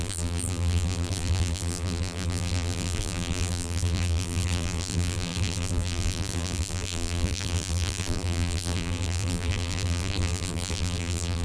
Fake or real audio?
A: fake